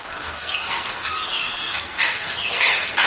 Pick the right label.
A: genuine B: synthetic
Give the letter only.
B